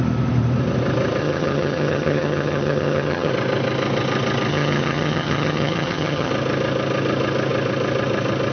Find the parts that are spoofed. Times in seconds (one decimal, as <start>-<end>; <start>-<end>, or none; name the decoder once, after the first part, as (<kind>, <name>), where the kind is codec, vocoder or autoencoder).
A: 1.2-3.3 (vocoder, HiFi-GAN); 4.5-6.3